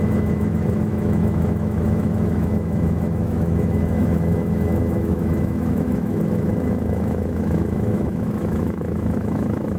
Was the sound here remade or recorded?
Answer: remade